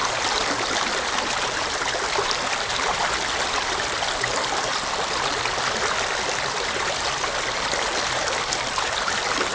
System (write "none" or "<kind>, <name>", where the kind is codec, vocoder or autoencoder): none